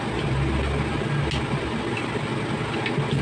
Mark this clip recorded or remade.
recorded